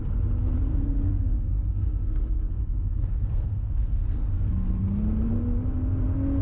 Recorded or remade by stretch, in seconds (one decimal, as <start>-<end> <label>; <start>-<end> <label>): 0.0-0.7 recorded; 0.7-4.5 remade; 4.5-6.4 recorded